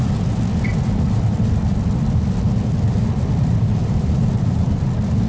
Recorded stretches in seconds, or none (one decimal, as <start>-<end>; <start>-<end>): 0.0-1.3; 4.5-5.3